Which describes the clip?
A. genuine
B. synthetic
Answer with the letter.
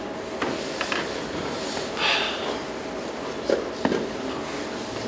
A